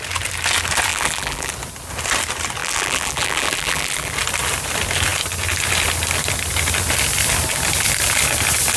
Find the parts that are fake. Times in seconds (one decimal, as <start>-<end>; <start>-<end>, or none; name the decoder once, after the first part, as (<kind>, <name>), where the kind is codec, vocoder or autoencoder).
0.9-1.5 (vocoder, BigVGAN v2); 2.6-4.1